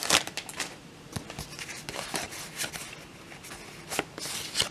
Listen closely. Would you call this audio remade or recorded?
recorded